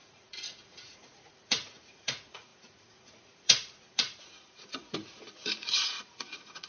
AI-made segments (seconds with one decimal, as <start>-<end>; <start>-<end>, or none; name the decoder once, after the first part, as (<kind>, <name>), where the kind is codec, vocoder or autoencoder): 0.0-6.7 (vocoder, Vocos)